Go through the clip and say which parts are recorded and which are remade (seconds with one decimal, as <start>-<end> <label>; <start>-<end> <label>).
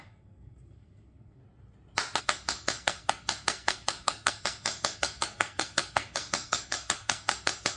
0.0-1.4 remade; 1.4-2.2 recorded; 2.2-7.8 remade